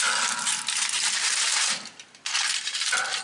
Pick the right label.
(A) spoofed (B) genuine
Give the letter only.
B